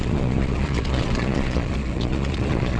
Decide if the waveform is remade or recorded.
remade